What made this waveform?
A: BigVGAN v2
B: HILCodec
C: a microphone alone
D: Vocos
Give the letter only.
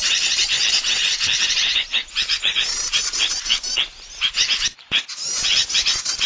A